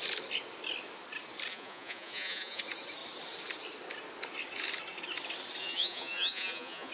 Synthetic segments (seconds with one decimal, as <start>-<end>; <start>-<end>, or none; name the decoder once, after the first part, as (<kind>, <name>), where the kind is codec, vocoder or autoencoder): 1.5-2.6 (vocoder, Vocos); 5.6-6.9